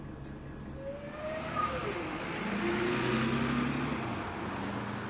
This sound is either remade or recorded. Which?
recorded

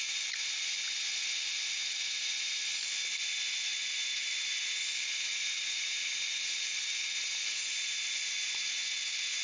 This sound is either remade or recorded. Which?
recorded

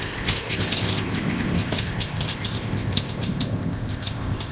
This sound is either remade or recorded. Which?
remade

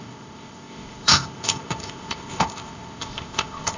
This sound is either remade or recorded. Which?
remade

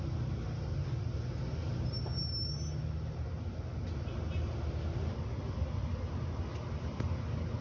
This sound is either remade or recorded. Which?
recorded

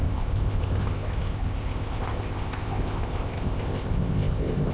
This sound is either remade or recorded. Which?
remade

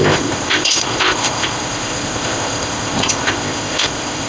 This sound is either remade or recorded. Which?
remade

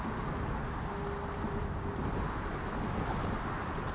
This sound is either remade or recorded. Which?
recorded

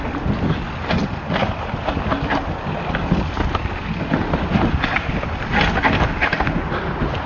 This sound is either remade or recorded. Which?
recorded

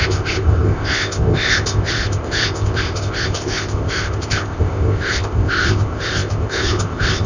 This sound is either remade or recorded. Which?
remade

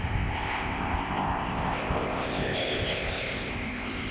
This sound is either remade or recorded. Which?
remade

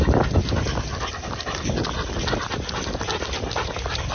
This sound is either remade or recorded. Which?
recorded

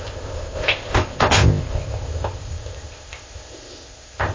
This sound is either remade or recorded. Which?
remade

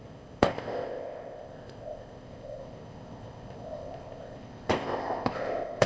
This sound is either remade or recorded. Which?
remade